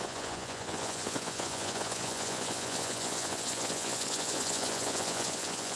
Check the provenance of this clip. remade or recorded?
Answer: remade